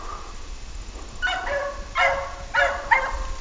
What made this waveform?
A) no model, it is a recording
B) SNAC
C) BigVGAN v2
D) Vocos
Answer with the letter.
A